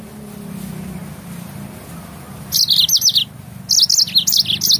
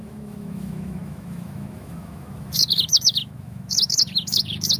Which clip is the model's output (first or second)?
second